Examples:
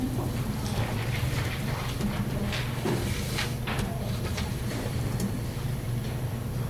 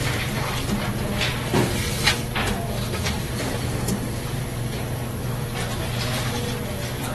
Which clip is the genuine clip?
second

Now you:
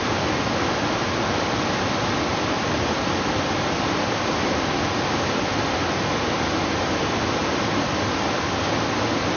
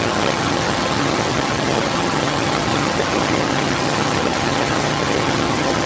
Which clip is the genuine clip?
first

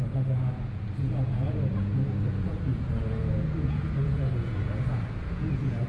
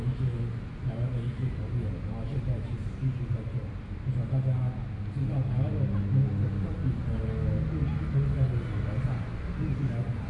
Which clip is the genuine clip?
second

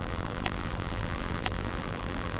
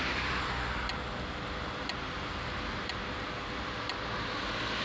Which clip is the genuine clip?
second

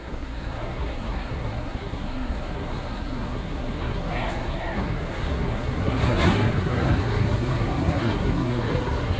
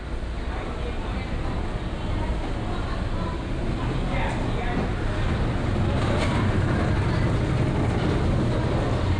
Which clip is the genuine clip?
second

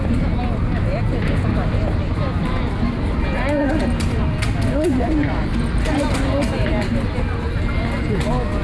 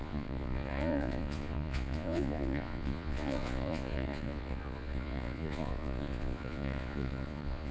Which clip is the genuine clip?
first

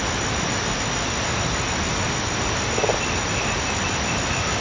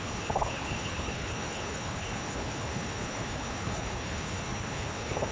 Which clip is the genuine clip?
first